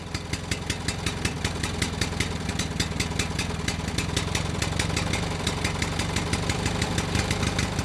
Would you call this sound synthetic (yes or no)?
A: no